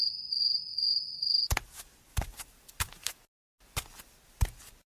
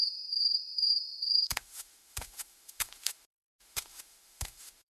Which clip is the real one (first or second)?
first